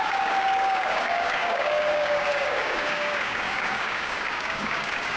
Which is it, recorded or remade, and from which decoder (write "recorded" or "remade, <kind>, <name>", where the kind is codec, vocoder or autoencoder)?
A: remade, codec, DAC